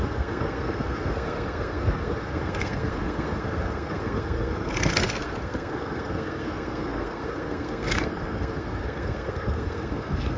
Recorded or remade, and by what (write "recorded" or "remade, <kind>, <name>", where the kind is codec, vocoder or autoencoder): remade, codec, SNAC